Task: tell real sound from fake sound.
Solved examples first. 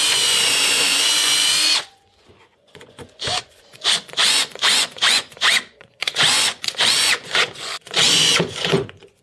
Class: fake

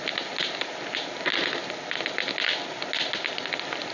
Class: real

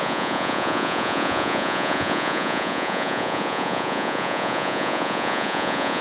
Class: fake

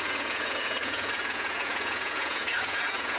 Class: fake